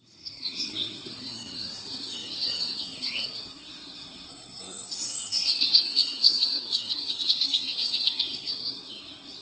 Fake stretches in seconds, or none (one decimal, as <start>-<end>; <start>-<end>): 0.0-9.4

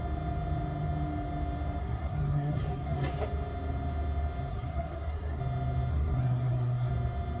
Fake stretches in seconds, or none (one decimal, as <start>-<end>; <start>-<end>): 1.8-3.1; 4.5-5.4; 5.9-6.9

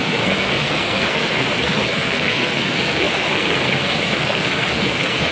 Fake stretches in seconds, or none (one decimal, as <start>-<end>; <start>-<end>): 0.0-5.3

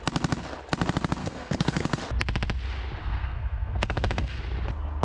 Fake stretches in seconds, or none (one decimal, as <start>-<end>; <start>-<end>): 1.2-2.0; 3.0-4.4

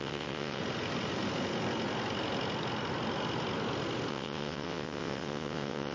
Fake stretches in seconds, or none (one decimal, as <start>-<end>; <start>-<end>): 0.0-0.6; 4.1-5.9

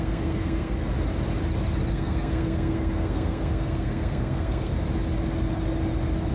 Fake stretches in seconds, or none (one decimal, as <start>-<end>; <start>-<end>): 0.0-0.8; 1.9-4.7

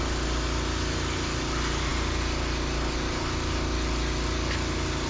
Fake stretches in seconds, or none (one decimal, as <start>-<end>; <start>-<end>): none

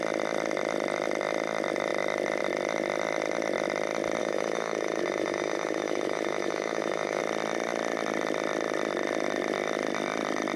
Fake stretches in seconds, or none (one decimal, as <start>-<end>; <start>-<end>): 4.2-7.2